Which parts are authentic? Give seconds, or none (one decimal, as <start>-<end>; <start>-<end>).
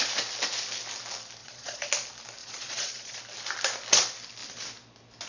0.0-1.4; 1.9-2.4; 3.2-5.3